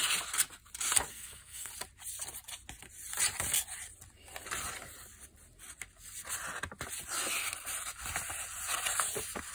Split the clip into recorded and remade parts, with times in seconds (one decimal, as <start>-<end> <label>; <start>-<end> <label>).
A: 0.0-1.1 recorded; 1.1-1.7 remade; 1.7-9.5 recorded